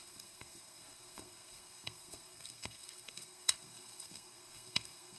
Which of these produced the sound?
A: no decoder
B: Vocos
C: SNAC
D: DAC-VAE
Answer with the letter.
C